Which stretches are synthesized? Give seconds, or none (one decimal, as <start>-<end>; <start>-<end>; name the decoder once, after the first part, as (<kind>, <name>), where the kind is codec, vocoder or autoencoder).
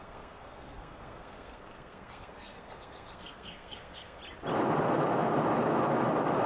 0.0-4.2 (codec, SNAC)